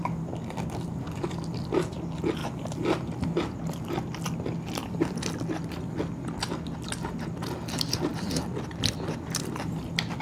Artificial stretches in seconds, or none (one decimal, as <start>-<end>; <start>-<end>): none